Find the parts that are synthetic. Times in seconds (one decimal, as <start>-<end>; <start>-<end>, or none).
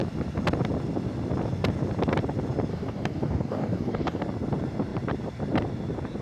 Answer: 2.7-4.2